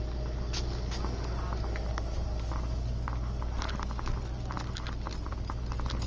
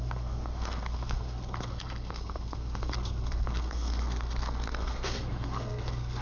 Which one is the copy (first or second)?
second